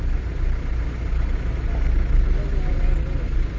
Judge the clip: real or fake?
real